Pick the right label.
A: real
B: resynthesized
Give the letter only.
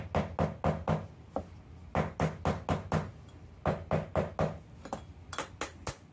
A